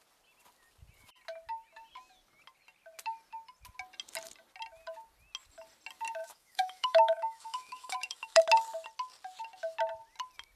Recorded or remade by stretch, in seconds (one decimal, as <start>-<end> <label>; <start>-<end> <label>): 0.0-6.2 recorded; 6.2-8.4 remade; 8.4-10.6 recorded